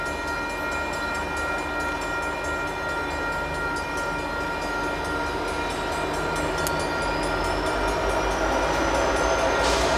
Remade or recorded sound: recorded